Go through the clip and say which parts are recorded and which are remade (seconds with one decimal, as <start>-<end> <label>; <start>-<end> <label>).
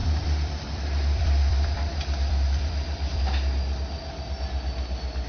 0.0-3.2 remade; 3.2-5.3 recorded